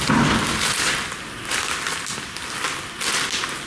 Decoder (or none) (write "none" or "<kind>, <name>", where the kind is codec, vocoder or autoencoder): none